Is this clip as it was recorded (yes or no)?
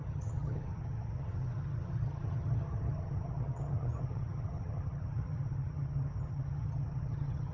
no